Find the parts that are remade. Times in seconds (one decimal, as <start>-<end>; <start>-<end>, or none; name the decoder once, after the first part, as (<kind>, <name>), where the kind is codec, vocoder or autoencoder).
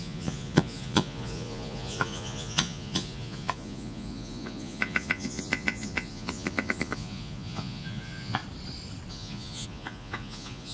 0.0-8.4 (vocoder, Vocos); 9.1-10.7